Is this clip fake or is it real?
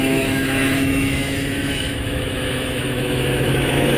fake